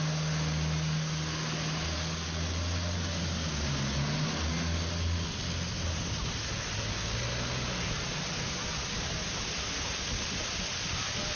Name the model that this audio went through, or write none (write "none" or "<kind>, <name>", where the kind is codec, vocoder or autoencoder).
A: none